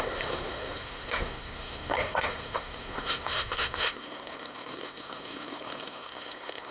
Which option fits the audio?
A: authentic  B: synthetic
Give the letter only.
B